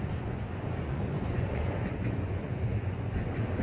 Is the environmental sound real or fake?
fake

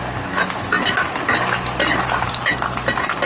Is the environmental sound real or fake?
real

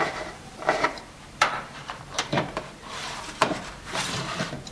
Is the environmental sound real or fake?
fake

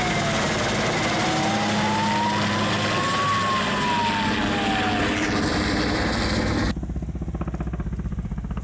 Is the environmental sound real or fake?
real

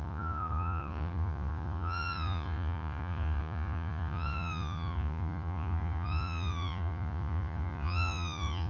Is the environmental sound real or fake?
fake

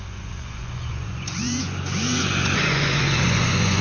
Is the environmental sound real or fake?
fake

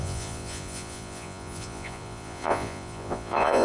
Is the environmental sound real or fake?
fake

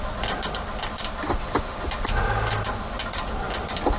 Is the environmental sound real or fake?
real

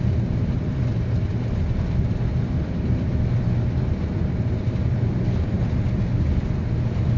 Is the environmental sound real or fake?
real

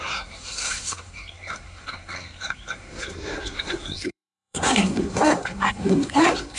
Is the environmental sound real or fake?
fake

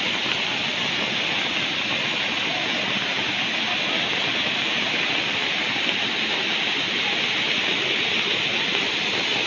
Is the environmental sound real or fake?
real